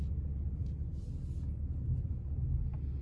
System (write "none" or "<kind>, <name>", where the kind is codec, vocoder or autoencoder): none